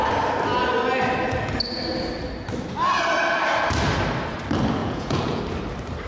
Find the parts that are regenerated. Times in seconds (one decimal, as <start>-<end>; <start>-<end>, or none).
4.8-5.4